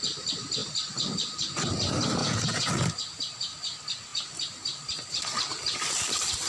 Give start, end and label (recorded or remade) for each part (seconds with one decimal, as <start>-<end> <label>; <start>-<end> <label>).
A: 0.0-2.2 recorded; 2.2-2.7 remade; 2.7-6.5 recorded